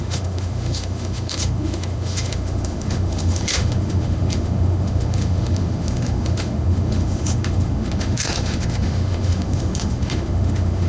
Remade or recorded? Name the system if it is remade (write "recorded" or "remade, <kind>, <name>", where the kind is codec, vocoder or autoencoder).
remade, autoencoder, DAC-VAE